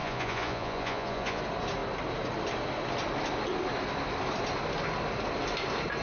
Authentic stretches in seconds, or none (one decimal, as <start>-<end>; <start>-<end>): 1.4-6.0